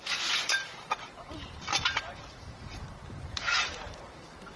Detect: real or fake fake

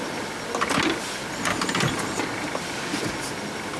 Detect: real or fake real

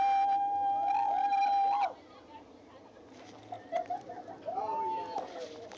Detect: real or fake real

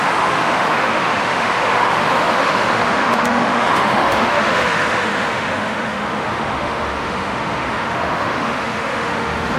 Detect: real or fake fake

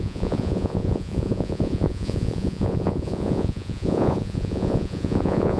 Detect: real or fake fake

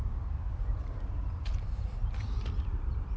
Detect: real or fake real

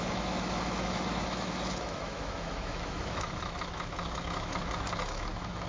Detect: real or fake fake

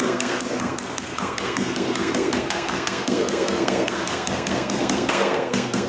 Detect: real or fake fake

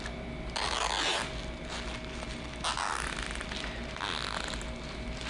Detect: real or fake real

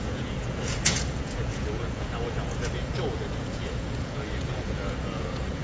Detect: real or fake fake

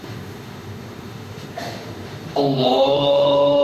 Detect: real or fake fake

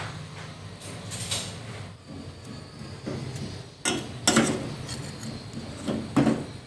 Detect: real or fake real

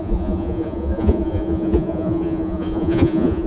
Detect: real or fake fake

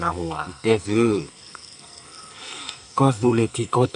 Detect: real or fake fake